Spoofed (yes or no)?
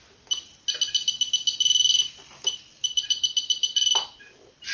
no